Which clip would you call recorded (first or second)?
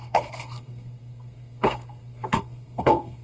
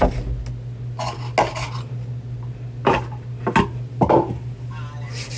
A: second